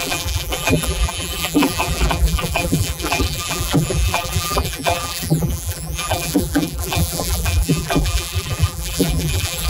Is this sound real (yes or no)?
no